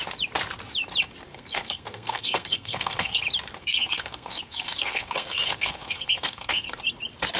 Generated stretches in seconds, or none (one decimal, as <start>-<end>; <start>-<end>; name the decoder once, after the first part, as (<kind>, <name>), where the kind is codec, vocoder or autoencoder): 1.3-3.2 (codec, SNAC); 3.6-6.8